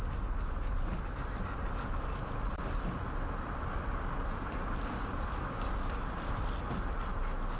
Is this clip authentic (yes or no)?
yes